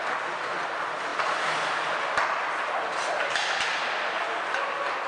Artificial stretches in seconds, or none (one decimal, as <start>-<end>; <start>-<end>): none